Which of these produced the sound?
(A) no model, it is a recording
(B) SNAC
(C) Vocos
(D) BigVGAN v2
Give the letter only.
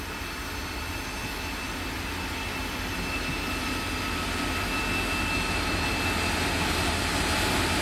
A